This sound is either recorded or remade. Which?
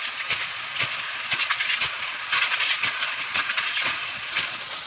remade